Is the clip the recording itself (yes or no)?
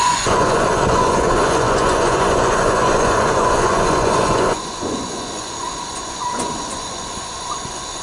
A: no